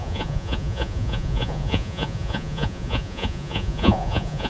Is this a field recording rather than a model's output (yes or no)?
no